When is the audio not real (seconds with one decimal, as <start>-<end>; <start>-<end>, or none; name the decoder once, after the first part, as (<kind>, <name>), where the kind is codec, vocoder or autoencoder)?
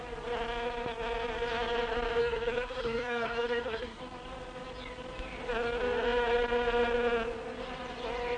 2.2-4.0 (codec, SNAC)